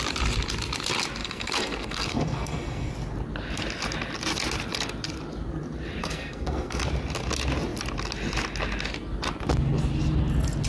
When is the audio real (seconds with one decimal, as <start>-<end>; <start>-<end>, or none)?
0.0-1.2; 2.9-6.0; 6.8-10.7

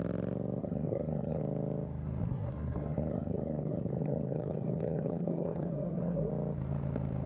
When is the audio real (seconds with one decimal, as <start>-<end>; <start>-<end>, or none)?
0.0-0.6; 1.4-2.2; 6.3-7.3